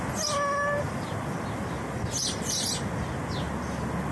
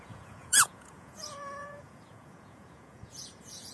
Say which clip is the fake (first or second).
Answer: second